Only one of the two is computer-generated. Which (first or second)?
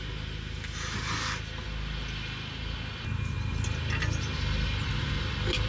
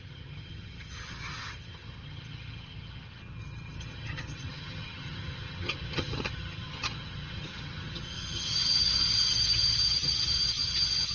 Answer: second